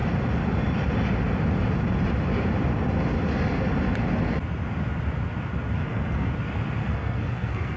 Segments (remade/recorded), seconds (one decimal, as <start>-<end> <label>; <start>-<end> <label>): 0.0-5.8 recorded; 5.8-6.3 remade; 6.3-6.8 recorded; 6.8-7.8 remade